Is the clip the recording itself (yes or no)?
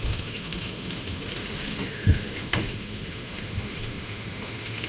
no